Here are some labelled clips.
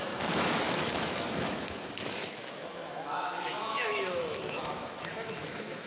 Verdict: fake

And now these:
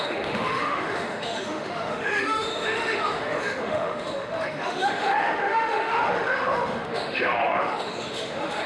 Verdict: fake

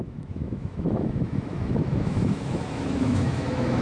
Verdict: fake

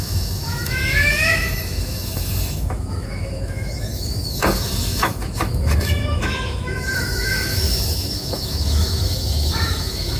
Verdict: fake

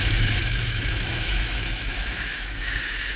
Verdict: fake